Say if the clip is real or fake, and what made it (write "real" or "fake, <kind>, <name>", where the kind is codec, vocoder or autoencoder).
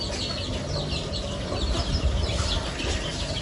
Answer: real